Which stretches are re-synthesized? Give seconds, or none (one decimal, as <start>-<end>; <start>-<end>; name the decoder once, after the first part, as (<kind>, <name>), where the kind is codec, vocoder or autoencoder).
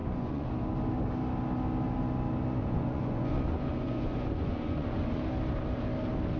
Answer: 0.0-0.5 (vocoder, Vocos); 2.6-5.2